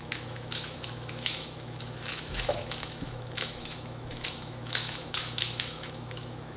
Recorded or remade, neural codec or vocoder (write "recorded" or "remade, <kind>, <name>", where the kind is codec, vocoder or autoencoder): remade, autoencoder, DAC-VAE